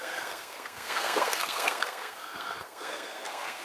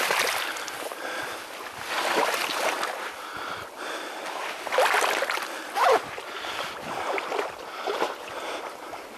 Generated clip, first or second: first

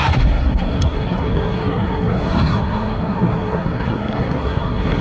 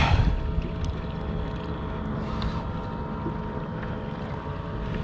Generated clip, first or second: first